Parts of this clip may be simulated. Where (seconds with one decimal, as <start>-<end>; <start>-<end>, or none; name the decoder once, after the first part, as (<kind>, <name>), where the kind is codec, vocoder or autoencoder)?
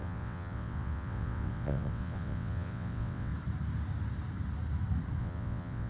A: 0.0-3.3 (vocoder, WaveNeXt); 5.2-5.9